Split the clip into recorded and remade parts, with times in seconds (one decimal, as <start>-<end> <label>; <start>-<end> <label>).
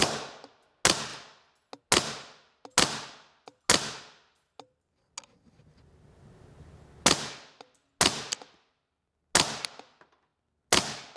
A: 0.0-11.2 recorded